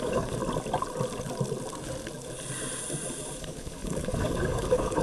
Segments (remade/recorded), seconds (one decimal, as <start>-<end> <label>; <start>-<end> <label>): 0.0-0.4 remade; 0.4-3.4 recorded; 3.4-5.0 remade